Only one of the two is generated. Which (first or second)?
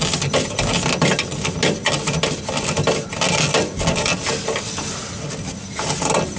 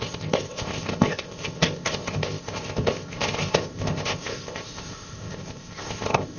second